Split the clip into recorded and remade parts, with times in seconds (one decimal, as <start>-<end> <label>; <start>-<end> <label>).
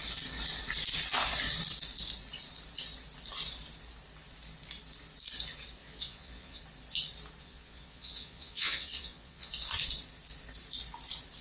0.0-5.8 recorded; 5.8-6.6 remade; 6.6-7.4 recorded; 7.4-9.5 remade; 9.5-11.4 recorded